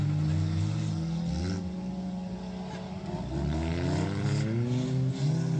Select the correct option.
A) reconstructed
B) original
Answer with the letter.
B